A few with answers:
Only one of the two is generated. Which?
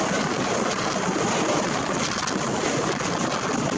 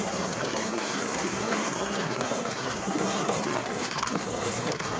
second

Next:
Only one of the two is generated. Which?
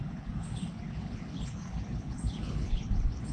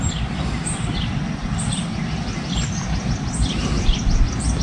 first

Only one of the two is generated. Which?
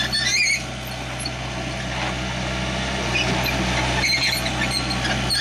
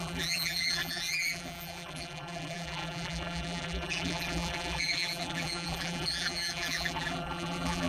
second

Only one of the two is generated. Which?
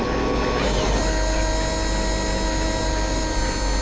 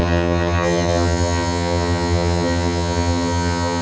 second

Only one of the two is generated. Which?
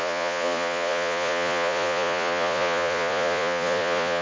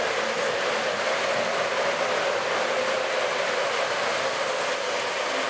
first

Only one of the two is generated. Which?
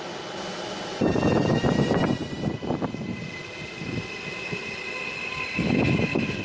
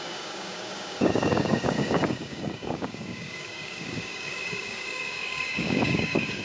second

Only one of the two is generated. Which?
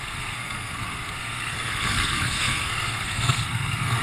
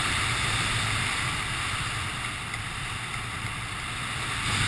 first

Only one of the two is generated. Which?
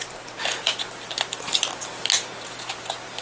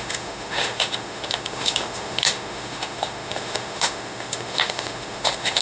second